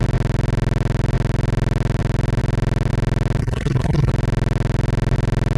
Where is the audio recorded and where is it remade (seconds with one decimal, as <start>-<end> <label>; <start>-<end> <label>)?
0.0-3.4 recorded; 3.4-4.1 remade; 4.1-5.6 recorded